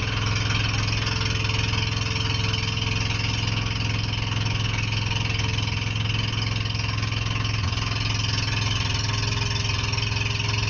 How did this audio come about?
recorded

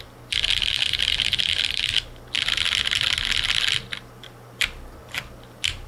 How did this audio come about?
recorded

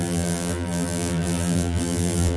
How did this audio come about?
remade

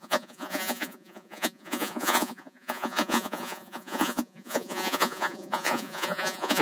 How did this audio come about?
remade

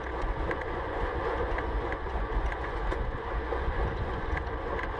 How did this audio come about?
remade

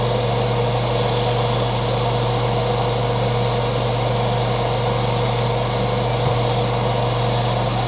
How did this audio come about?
recorded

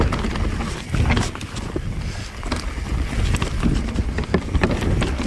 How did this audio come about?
recorded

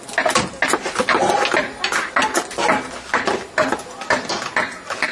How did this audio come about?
recorded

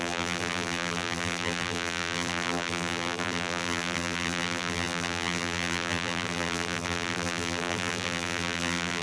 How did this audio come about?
remade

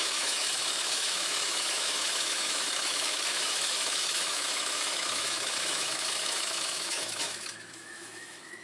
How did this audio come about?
remade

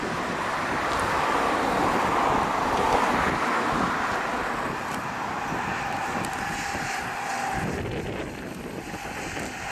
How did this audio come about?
recorded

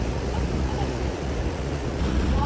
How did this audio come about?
remade